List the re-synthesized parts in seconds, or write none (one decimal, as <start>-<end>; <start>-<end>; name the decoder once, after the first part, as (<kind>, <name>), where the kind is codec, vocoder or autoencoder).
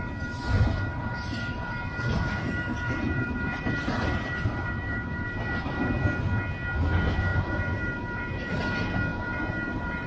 0.9-5.8 (vocoder, BigVGAN v2); 7.3-8.6; 9.1-10.1